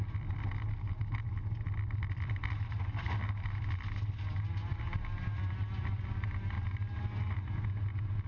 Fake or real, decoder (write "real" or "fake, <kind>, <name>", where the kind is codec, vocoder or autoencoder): real